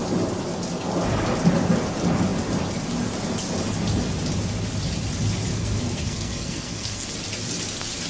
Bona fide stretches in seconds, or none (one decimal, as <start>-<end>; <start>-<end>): 0.0-5.5; 7.1-8.1